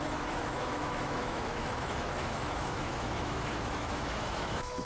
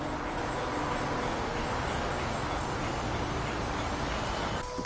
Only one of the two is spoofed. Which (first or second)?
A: first